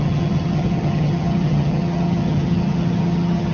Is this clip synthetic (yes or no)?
yes